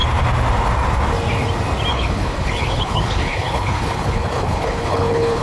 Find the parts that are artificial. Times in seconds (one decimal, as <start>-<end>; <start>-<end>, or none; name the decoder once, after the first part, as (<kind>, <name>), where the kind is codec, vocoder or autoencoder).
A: 1.9-5.4 (codec, HILCodec)